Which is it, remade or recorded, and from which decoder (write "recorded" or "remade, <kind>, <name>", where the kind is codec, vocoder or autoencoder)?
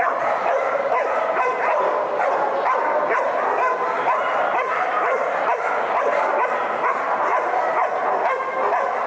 recorded